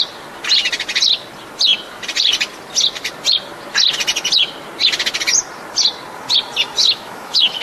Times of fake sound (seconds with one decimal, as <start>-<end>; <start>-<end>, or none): 6.8-7.6